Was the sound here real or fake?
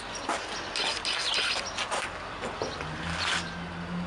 real